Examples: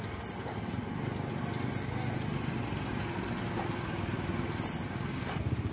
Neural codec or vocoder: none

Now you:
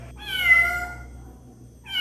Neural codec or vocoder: none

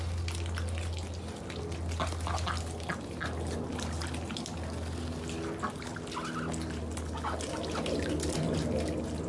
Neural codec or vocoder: none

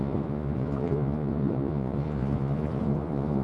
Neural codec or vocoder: vocoder, Vocos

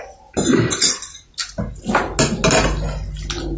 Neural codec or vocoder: none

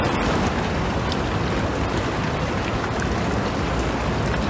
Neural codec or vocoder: none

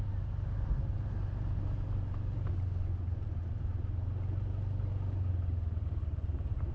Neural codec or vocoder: none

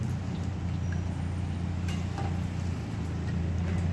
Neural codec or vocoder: none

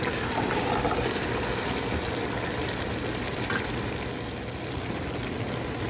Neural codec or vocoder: none